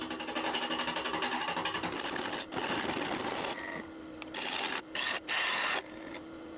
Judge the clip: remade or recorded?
recorded